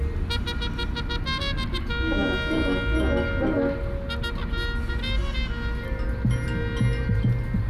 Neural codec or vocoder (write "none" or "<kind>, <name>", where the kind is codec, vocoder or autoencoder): none